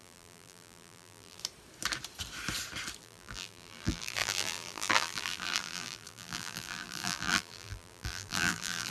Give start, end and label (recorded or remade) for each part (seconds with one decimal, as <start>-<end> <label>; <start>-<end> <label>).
0.0-1.4 remade; 1.4-3.0 recorded; 3.0-8.9 remade